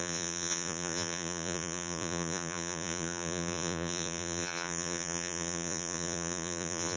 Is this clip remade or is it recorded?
remade